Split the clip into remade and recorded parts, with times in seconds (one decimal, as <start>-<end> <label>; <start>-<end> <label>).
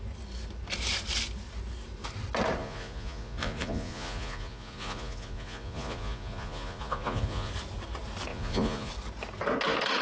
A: 0.0-2.6 recorded; 2.6-7.5 remade; 7.5-8.3 recorded; 8.3-8.9 remade; 8.9-10.0 recorded